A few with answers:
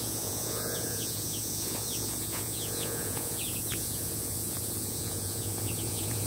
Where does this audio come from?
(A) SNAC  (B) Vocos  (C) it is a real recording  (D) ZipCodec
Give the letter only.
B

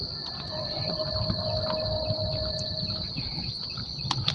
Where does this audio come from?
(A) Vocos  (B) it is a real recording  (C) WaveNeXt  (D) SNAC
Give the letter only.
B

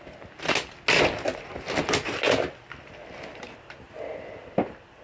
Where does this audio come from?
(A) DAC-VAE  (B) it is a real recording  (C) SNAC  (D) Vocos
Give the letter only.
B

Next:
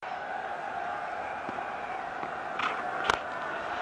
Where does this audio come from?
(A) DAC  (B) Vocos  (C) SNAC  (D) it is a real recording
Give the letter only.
D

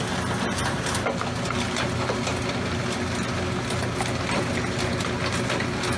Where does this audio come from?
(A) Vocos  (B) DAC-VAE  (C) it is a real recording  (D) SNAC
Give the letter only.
C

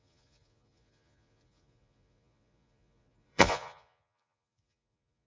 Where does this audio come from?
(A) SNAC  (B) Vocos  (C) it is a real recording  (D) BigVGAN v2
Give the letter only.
B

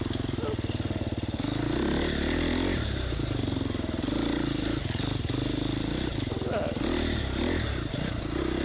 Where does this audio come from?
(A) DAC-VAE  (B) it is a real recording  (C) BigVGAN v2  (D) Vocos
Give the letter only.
B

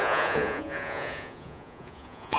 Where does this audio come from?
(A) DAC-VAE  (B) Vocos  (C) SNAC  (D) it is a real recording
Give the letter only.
B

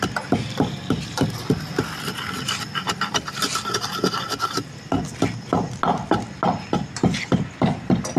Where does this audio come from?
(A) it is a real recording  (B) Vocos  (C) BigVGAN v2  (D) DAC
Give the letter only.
A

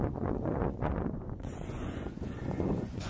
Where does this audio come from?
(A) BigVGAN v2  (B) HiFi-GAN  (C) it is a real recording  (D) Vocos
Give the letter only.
D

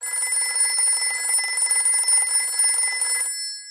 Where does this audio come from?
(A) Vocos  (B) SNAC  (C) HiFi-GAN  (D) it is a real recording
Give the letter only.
D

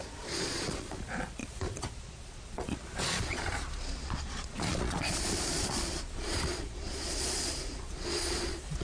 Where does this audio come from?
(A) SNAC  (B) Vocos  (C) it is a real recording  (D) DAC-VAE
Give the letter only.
B